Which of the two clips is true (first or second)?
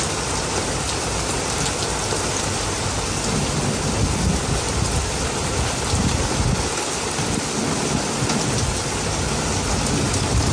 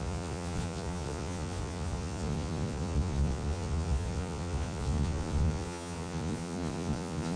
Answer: first